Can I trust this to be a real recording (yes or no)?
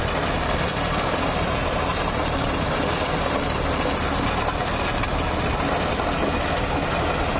yes